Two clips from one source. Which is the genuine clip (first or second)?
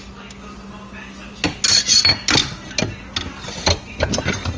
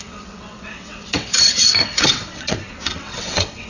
first